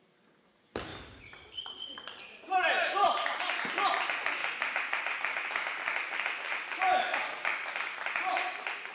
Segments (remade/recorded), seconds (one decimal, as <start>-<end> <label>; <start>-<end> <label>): 0.0-0.9 recorded; 0.9-3.6 remade; 3.6-8.9 recorded